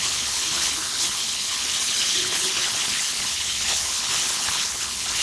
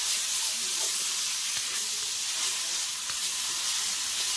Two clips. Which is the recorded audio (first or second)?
second